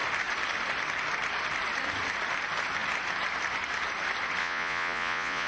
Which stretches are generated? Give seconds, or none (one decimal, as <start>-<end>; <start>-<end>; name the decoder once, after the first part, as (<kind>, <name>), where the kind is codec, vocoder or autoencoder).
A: 4.4-5.5 (vocoder, Vocos)